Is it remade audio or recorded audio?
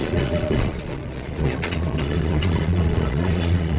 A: remade